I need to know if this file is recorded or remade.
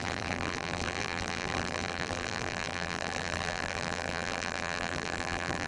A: remade